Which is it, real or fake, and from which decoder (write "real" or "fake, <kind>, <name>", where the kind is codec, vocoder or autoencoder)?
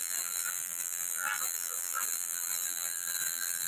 fake, vocoder, BigVGAN v2